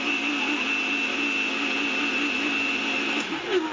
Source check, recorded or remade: recorded